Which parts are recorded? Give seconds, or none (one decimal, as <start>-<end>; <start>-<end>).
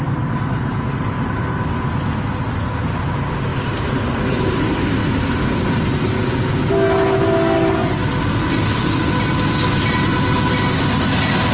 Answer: 0.0-11.5